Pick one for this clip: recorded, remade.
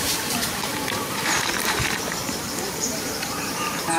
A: remade